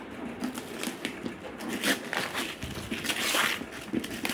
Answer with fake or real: real